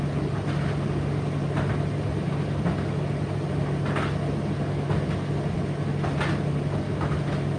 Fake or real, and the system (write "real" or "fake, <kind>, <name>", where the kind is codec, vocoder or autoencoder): real